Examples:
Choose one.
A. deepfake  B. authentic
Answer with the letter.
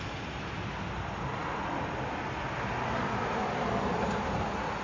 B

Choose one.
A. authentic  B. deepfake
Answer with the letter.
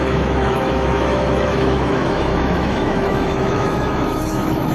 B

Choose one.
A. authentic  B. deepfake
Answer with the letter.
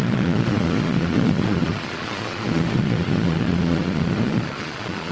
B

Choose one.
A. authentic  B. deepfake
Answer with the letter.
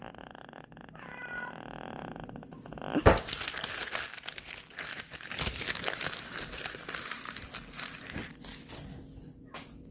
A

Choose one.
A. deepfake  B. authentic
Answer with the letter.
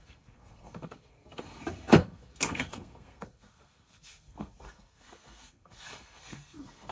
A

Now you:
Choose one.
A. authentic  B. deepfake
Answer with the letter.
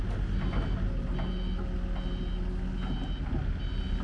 A